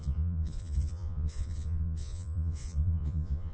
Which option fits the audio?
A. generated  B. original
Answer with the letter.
A